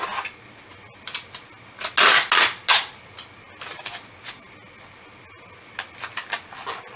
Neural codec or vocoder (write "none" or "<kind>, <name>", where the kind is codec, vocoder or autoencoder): none